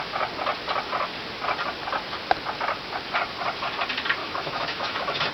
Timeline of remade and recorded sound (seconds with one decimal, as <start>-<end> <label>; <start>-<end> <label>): 0.0-4.2 recorded; 4.2-5.3 remade